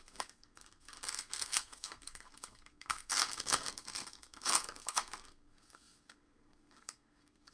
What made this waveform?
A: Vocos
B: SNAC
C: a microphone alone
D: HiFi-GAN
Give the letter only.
B